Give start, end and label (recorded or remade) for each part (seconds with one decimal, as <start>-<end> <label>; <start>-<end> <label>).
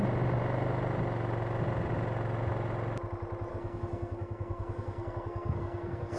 0.0-3.5 recorded; 3.5-6.2 remade